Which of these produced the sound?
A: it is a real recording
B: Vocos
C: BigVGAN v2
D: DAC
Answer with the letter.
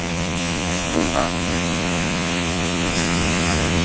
B